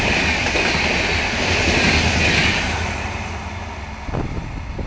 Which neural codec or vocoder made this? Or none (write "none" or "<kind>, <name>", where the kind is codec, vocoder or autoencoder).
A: none